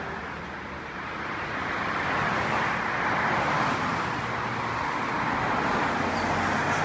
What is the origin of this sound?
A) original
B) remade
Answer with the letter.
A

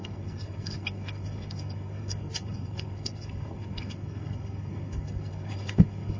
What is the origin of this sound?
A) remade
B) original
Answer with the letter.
A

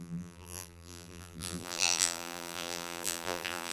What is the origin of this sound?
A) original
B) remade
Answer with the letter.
B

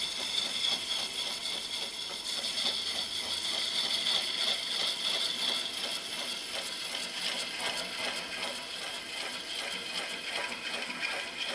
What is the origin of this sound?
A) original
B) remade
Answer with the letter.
A